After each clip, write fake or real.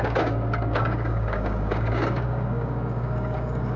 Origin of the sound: fake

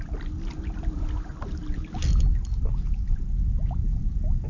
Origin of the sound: real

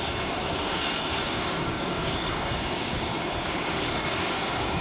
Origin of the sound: fake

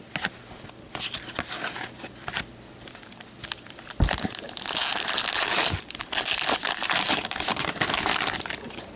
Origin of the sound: real